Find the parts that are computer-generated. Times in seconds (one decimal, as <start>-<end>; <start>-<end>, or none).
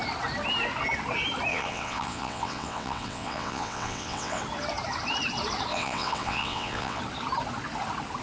1.5-4.4; 5.7-7.0